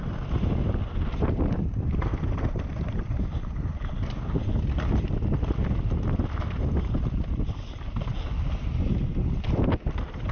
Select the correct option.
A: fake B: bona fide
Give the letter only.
B